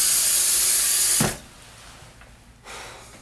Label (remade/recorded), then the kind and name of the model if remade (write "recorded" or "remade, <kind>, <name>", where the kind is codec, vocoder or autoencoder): recorded